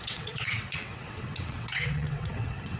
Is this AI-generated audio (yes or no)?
yes